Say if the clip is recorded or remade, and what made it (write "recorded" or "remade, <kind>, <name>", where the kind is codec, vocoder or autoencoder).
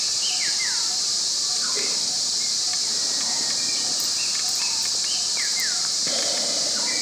remade, vocoder, BigVGAN v2